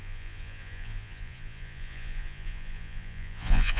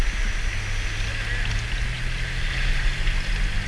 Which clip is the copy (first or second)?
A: first